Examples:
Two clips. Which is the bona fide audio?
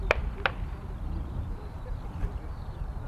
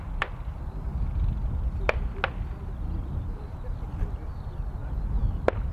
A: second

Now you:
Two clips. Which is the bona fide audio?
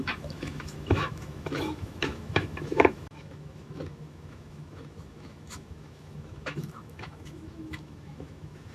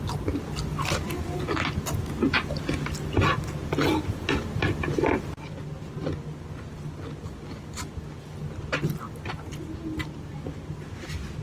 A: second